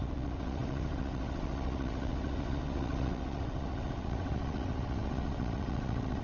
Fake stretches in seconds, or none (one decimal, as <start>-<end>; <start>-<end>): 0.0-6.2